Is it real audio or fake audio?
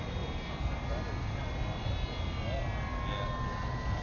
real